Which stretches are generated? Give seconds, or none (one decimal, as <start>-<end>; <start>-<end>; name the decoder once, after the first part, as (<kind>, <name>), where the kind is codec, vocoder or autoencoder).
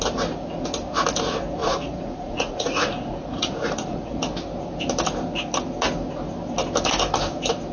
1.6-4.2 (vocoder, Vocos)